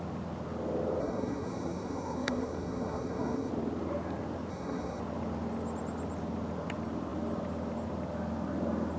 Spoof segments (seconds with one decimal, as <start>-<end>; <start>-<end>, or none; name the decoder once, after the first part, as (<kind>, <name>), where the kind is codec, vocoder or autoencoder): 1.0-3.5 (codec, SNAC); 4.5-5.0

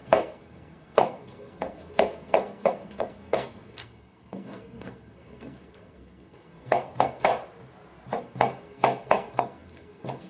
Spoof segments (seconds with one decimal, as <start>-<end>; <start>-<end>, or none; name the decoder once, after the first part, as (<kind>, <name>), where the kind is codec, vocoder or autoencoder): 0.0-7.3 (codec, SNAC); 8.2-10.3

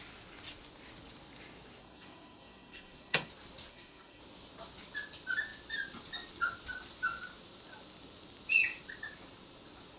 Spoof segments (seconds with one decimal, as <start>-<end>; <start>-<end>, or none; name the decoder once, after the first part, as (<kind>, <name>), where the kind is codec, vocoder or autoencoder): 1.8-3.3 (codec, SNAC); 3.7-4.2

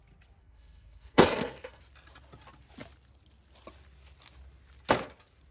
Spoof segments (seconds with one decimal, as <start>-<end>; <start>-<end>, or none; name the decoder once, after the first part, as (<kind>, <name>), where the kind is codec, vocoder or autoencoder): 0.4-1.8 (codec, SNAC)

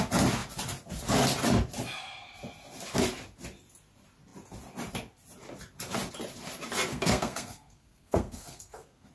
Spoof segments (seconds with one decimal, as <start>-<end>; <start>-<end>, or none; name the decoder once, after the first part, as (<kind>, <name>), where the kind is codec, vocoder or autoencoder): 6.9-9.1 (codec, SNAC)